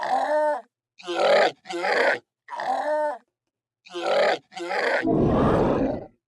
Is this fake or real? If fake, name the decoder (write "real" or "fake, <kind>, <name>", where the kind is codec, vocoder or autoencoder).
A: real